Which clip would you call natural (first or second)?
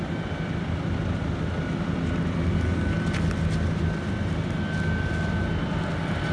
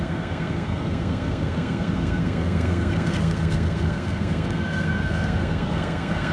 first